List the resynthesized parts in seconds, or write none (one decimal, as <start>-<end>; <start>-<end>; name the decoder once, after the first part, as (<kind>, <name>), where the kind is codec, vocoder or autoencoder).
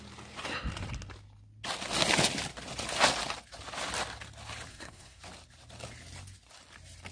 4.7-5.2 (codec, SNAC)